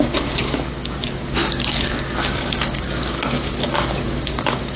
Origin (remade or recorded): remade